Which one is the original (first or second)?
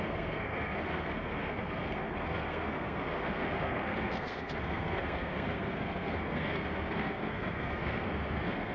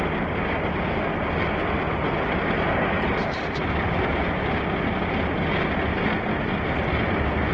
second